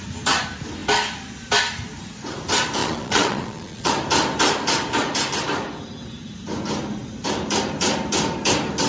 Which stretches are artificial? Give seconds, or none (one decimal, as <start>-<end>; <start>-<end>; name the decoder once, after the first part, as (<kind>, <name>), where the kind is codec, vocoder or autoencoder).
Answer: 2.8-3.9 (vocoder, Vocos)